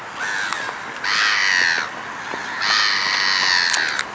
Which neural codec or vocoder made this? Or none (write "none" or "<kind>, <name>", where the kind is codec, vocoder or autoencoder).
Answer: none